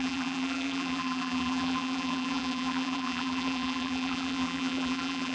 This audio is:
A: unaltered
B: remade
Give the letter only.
B